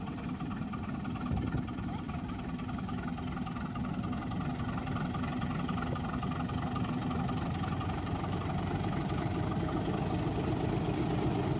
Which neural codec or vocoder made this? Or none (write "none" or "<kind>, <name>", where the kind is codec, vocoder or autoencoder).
none